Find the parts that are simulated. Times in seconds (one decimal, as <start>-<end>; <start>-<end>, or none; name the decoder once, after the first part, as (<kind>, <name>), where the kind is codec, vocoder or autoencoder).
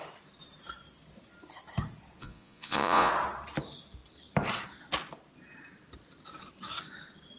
2.2-3.1 (vocoder, Vocos)